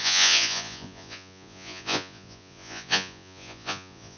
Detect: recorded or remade remade